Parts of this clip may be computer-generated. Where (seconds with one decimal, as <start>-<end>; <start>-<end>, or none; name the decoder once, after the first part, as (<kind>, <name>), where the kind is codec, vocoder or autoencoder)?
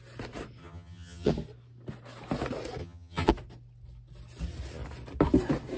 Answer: 0.6-1.3 (vocoder, HiFi-GAN); 2.8-3.3